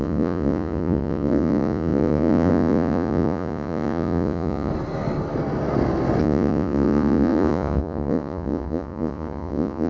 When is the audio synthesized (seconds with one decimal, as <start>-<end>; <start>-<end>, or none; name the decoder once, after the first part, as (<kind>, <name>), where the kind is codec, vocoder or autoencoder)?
0.0-4.7 (vocoder, Vocos); 6.2-9.9